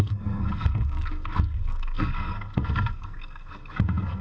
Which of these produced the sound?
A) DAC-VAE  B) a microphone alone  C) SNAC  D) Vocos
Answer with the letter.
C